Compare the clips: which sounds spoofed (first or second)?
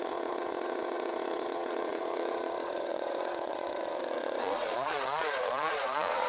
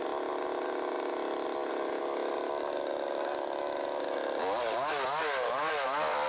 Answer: first